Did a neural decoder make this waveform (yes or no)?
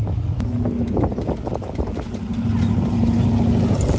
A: no